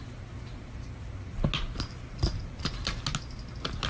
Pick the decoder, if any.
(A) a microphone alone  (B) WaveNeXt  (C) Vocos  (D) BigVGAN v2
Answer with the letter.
A